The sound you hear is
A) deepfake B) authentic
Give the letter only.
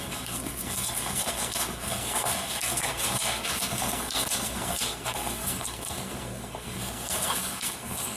A